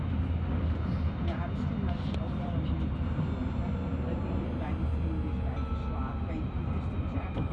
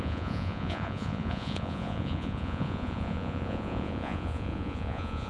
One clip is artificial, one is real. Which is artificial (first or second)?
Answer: second